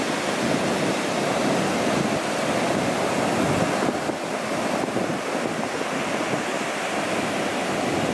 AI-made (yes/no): no